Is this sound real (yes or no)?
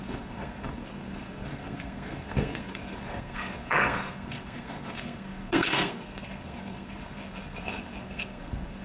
no